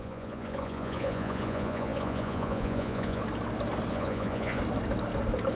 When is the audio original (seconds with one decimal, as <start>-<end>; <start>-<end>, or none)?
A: 3.2-3.9; 4.6-5.5